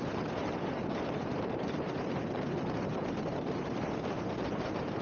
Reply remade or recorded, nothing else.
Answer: remade